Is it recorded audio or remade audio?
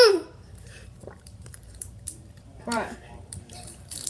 remade